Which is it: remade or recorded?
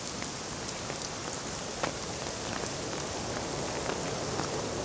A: recorded